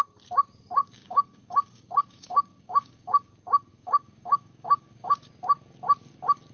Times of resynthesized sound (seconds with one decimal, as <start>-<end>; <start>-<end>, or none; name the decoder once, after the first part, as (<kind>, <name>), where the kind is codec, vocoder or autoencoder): 0.8-3.3 (codec, DAC); 3.7-5.3